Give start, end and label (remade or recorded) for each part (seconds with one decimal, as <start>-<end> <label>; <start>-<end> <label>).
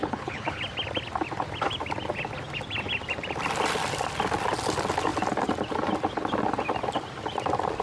0.0-0.6 remade; 0.6-7.8 recorded